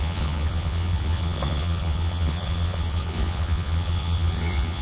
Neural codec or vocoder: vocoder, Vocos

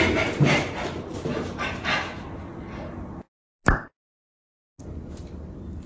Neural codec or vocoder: none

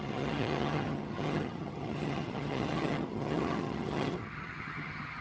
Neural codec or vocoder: vocoder, HiFi-GAN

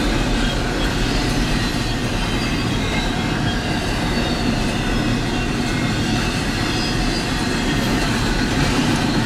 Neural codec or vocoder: none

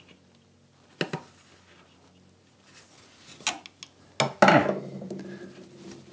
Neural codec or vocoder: none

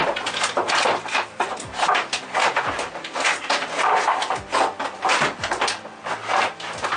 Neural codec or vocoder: none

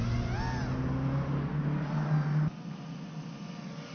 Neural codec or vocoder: none